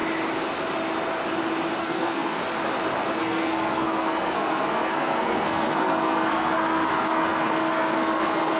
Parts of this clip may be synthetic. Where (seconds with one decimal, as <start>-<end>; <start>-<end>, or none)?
1.8-2.4; 3.2-8.6